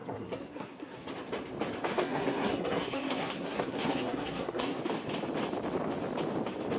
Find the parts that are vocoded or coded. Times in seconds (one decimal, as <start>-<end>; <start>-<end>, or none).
0.0-1.1; 1.9-4.8